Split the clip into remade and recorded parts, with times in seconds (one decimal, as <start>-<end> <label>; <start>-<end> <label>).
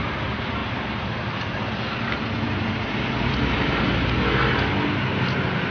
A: 0.0-5.7 recorded